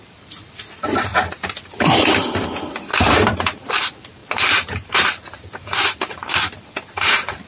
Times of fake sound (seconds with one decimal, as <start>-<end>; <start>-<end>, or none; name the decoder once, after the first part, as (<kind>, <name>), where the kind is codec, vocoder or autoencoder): 0.0-1.1 (vocoder, BigVGAN v2); 3.2-7.5